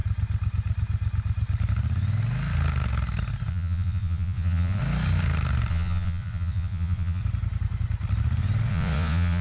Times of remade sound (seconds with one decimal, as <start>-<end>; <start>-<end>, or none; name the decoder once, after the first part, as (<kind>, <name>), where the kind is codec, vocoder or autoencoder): 3.5-4.8 (vocoder, Vocos); 5.7-7.2; 8.7-9.4